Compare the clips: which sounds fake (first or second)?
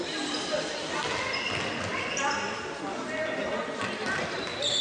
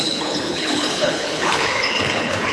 second